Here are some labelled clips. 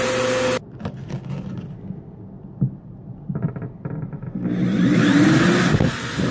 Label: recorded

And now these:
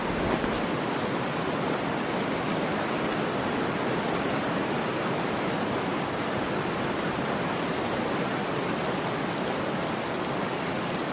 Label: recorded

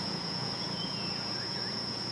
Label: remade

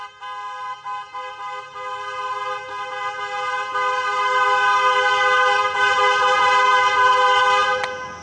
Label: recorded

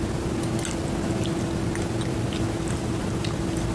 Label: recorded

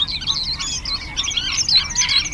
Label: recorded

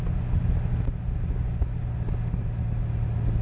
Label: recorded